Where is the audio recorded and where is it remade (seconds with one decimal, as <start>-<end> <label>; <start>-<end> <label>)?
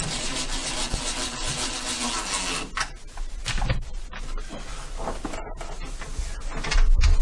0.0-7.2 recorded